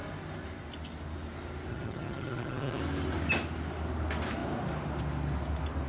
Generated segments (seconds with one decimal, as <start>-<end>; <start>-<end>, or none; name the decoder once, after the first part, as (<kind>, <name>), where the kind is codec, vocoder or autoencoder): 1.7-2.8 (vocoder, HiFi-GAN)

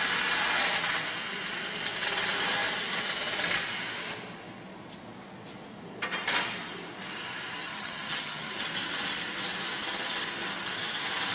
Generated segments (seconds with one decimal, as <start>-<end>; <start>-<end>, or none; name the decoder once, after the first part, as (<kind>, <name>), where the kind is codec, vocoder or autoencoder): 7.6-8.6 (vocoder, HiFi-GAN)